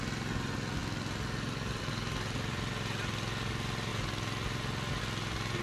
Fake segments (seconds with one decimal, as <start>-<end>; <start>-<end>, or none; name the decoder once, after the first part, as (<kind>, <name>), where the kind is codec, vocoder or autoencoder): none